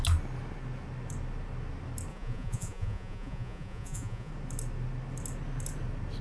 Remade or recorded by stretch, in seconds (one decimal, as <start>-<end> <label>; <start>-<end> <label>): 0.0-2.1 recorded; 2.1-4.3 remade; 4.3-6.2 recorded